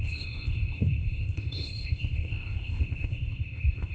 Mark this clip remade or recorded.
remade